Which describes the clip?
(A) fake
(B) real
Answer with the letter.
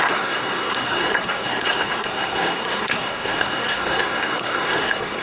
A